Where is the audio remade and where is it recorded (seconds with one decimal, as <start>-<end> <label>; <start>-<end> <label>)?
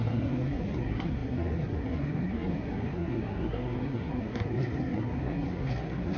0.0-6.2 remade